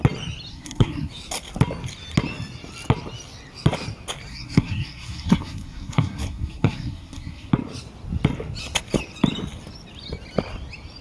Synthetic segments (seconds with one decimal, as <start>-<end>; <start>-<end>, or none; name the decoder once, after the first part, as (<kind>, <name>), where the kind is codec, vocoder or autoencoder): 0.5-1.1 (codec, SNAC); 4.3-7.5